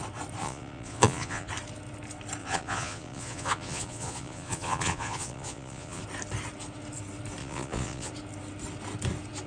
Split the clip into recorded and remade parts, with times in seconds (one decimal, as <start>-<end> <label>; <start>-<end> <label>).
0.0-0.4 recorded; 0.4-1.5 remade; 1.5-2.4 recorded; 2.4-6.0 remade; 6.0-7.4 recorded; 7.4-8.1 remade; 8.1-9.5 recorded